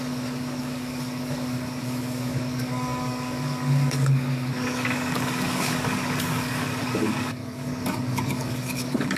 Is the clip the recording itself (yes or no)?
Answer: no